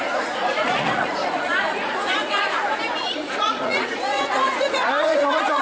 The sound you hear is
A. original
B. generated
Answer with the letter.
B